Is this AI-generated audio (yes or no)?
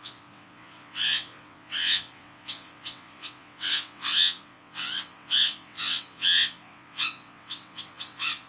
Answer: yes